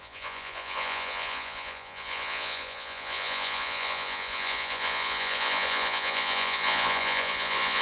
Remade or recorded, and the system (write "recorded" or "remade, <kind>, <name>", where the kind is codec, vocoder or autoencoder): remade, vocoder, Vocos